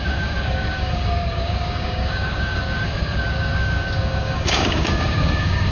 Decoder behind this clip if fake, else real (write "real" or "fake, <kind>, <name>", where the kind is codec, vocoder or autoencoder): fake, codec, DAC